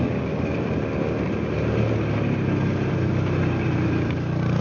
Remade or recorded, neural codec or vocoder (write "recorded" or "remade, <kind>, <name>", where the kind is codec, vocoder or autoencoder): recorded